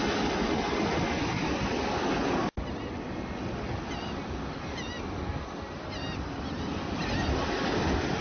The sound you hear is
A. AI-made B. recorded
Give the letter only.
B